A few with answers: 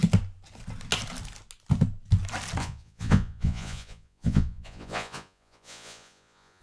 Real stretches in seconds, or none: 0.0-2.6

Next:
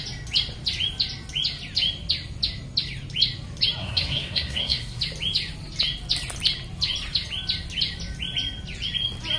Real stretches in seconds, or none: 0.0-3.8; 5.0-9.4

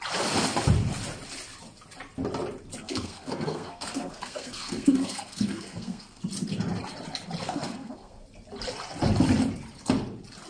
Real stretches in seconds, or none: 0.0-2.8; 6.2-7.4; 8.2-10.5

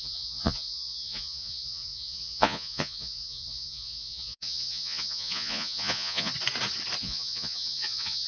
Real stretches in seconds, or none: 6.3-7.0